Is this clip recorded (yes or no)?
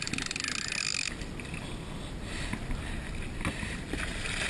yes